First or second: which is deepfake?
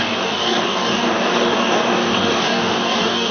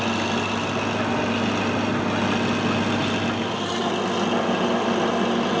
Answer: first